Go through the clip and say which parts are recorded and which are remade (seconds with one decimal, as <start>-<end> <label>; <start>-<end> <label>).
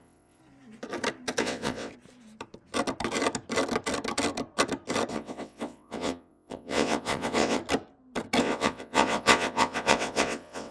0.0-0.4 remade; 0.4-1.4 recorded; 1.4-1.9 remade; 1.9-5.1 recorded; 5.1-7.6 remade; 7.6-8.4 recorded; 8.4-10.7 remade